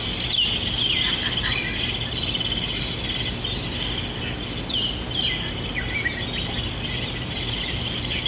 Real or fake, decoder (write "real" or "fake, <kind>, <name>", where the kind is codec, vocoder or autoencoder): real